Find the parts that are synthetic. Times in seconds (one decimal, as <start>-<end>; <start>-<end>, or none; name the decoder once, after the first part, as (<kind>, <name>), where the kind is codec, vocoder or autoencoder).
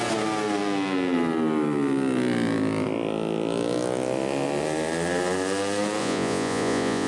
6.0-7.1 (vocoder, Vocos)